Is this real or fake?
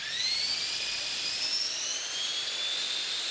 real